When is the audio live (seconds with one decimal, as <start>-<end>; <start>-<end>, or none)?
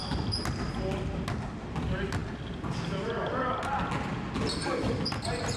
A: 0.0-5.6